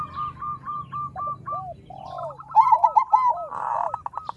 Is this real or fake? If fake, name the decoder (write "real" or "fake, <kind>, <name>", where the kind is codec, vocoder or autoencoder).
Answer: real